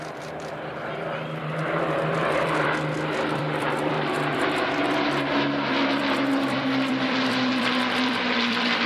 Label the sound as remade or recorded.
remade